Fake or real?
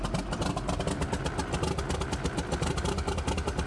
real